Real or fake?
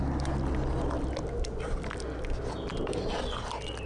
real